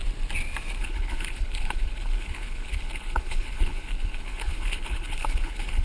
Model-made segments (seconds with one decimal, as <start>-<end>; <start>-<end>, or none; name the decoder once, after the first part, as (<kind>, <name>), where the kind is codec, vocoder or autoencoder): 0.8-5.8 (codec, HILCodec)